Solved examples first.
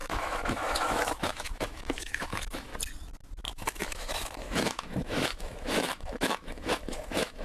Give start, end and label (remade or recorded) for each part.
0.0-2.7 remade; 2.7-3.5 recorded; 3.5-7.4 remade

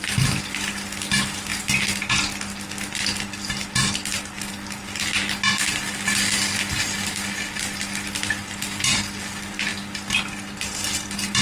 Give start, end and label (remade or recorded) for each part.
0.0-11.4 recorded

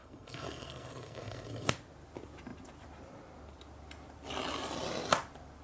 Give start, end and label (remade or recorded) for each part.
0.0-1.7 remade; 1.7-5.6 recorded

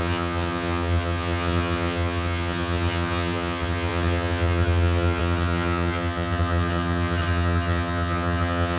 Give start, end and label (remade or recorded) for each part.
0.0-8.8 remade

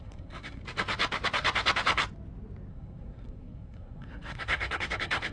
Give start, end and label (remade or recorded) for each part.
0.0-0.6 remade; 0.6-2.7 recorded; 2.7-5.3 remade

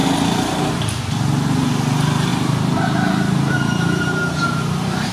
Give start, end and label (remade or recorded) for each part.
0.0-2.3 recorded; 2.3-5.1 remade